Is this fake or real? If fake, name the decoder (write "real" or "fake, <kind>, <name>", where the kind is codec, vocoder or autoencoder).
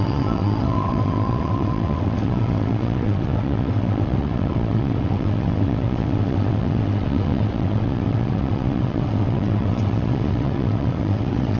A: fake, vocoder, WaveNeXt